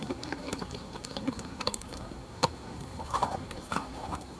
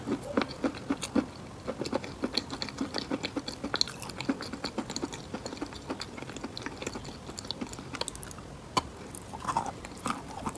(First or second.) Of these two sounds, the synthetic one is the first